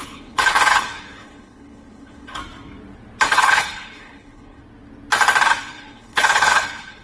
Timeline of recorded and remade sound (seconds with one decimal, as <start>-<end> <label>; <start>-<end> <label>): 0.0-2.4 remade; 2.4-3.3 recorded; 3.3-4.6 remade; 4.6-5.6 recorded; 5.6-7.0 remade